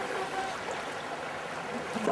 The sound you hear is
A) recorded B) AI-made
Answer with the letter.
A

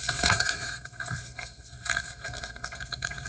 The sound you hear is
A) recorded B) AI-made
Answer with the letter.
B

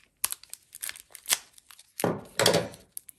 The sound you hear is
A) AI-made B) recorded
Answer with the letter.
B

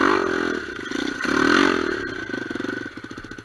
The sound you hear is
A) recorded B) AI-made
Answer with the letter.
A